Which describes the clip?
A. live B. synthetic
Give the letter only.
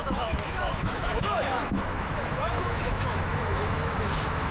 B